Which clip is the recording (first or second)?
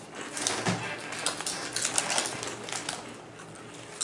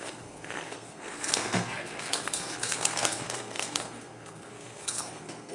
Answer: first